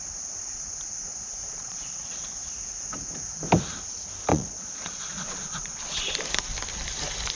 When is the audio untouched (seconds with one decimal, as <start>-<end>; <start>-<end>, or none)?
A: 0.0-1.1; 2.5-4.3; 6.1-7.4